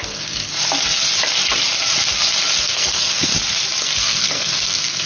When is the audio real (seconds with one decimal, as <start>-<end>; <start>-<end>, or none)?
0.5-2.6; 3.3-3.8

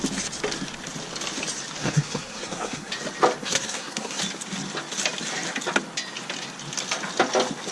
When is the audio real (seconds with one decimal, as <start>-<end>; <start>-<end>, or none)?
0.0-1.8; 2.9-3.4; 4.2-7.7

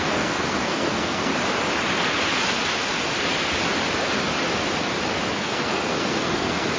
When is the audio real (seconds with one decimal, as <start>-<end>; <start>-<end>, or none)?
1.3-5.4

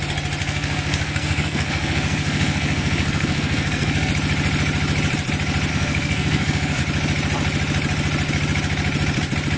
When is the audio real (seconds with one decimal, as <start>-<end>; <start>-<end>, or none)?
0.0-0.4; 4.1-5.7; 6.8-9.6

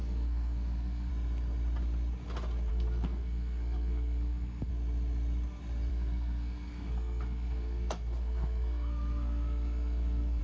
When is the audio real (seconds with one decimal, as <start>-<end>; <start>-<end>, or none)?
1.1-2.7; 4.7-5.9

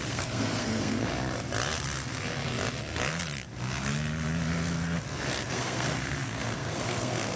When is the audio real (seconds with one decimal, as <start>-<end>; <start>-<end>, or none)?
1.1-5.5